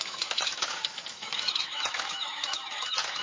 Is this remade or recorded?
remade